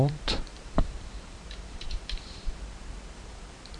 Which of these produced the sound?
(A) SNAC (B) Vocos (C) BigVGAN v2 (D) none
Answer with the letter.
C